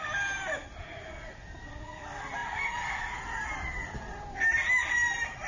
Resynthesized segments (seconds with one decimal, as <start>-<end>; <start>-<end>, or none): none